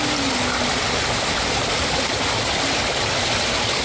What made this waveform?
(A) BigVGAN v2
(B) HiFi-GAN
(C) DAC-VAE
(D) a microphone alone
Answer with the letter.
D